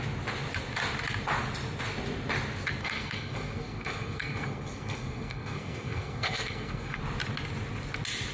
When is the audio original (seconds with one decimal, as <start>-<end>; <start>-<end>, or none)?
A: 0.0-2.8; 7.0-8.3